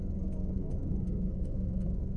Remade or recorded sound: remade